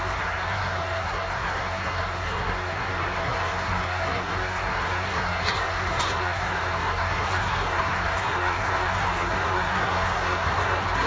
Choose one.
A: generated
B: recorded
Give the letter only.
A